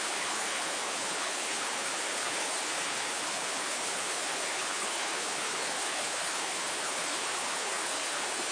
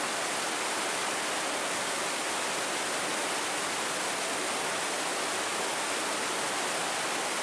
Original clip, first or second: second